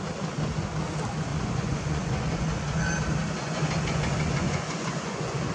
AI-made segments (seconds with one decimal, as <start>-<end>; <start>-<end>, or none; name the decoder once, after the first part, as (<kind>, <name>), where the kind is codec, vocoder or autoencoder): 1.3-2.9 (vocoder, Vocos); 3.4-5.5